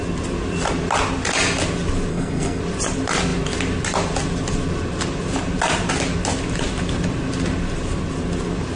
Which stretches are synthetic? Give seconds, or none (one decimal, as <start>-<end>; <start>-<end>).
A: 2.1-2.6